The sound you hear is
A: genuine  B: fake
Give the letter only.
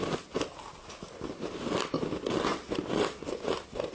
B